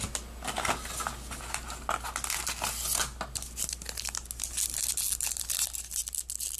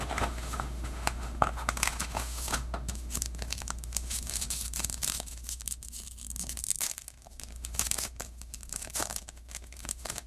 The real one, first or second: first